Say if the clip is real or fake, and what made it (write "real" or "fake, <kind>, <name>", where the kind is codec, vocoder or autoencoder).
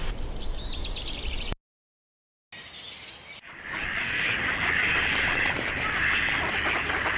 real